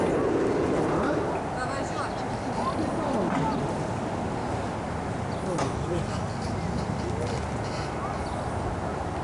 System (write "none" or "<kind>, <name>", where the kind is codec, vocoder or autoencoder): none